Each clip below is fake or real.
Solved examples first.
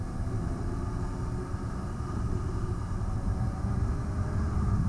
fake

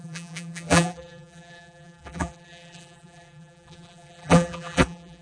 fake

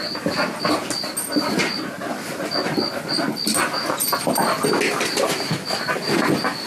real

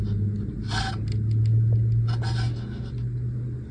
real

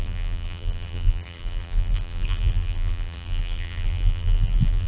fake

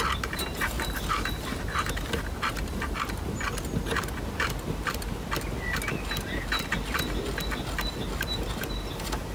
real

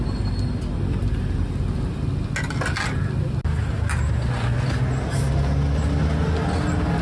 real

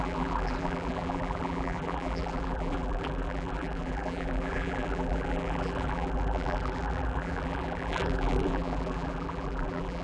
fake